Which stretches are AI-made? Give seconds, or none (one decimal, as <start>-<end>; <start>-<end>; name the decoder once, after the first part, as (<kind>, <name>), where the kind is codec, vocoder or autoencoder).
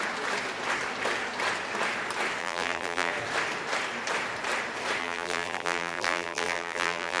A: 2.4-3.1 (vocoder, BigVGAN v2); 5.0-7.2